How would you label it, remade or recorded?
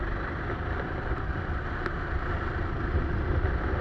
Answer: recorded